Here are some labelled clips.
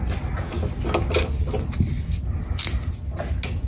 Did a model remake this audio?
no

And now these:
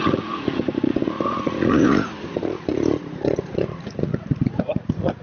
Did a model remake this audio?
yes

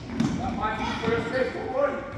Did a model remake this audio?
no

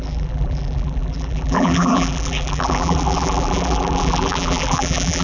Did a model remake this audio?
yes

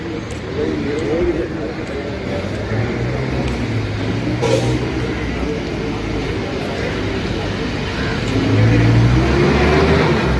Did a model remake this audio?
no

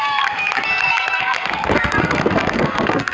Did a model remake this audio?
yes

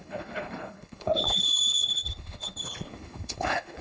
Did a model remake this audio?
yes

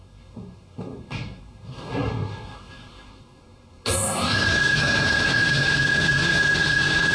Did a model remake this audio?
yes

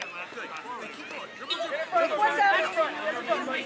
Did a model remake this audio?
no